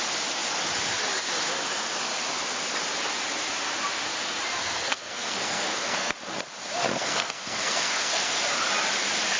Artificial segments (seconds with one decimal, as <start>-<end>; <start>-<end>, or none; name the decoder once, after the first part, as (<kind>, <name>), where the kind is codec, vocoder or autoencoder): 4.6-6.1 (codec, SNAC); 6.9-8.4